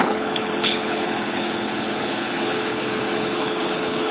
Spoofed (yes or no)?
yes